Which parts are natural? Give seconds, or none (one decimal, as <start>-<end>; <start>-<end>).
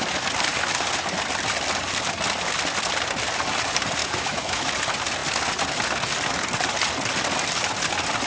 0.0-4.0; 4.7-8.3